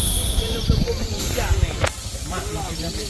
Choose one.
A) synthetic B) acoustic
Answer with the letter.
B